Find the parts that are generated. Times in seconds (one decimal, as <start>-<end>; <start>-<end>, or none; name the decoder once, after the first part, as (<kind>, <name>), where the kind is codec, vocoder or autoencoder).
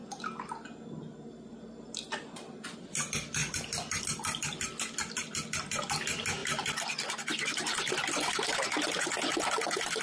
none